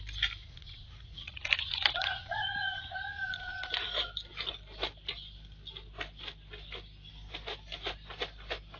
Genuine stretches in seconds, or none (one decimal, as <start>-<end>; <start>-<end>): 0.0-0.4; 3.9-8.8